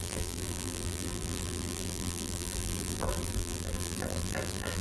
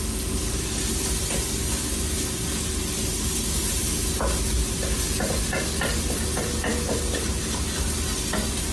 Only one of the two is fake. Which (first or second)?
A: first